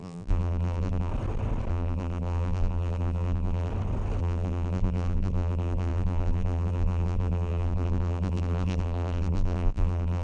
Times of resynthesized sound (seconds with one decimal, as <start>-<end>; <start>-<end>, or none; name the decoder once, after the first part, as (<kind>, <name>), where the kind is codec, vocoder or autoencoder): 0.0-1.1 (vocoder, BigVGAN v2); 1.7-3.7; 4.2-10.2